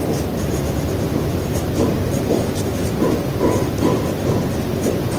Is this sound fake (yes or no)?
no